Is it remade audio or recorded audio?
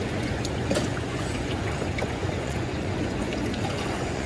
remade